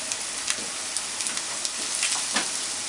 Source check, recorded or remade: recorded